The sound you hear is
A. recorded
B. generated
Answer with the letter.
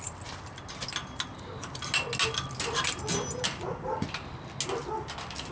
A